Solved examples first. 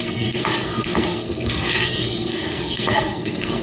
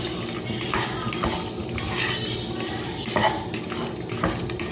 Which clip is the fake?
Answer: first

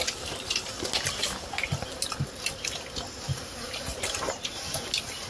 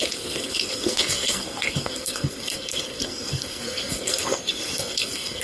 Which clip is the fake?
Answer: second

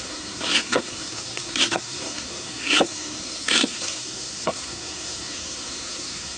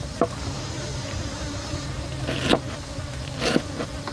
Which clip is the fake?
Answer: first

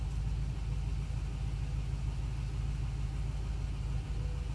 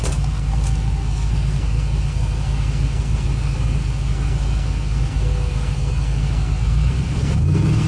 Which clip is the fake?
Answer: second